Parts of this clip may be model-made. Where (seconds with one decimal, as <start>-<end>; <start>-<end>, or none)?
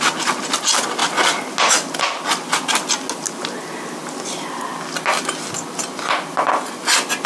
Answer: none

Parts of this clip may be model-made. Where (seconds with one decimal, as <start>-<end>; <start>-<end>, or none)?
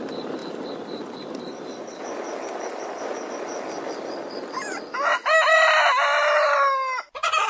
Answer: none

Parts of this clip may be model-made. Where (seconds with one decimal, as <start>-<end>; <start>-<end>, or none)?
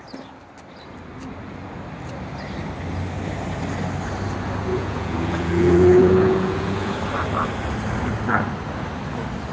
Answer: 4.7-6.9